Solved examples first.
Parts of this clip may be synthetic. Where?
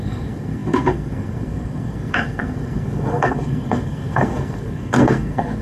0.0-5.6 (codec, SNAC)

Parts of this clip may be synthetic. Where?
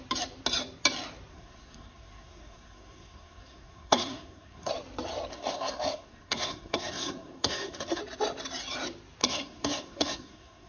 1.3-4.7 (codec, SNAC); 5.3-8.0; 9.2-10.7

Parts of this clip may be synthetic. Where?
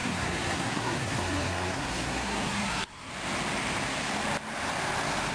0.0-3.1 (codec, SNAC)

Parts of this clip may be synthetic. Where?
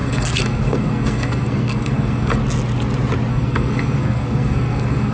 0.0-2.4 (codec, SNAC); 3.3-5.1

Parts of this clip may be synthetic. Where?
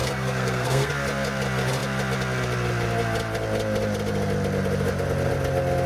0.0-0.9 (codec, SNAC)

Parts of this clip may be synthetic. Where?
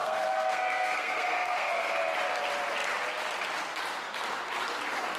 0.0-1.9 (codec, SNAC)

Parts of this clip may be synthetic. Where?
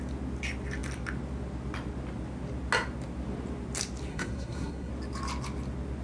4.1-4.9 (codec, SNAC)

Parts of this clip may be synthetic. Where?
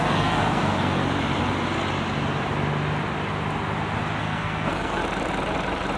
0.0-1.0 (codec, SNAC); 4.2-5.0